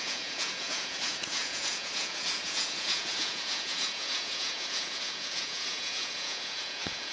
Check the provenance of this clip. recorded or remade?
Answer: remade